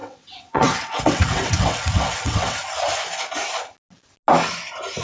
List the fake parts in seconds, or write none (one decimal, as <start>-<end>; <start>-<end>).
0.0-2.6